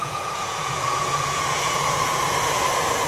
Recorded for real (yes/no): no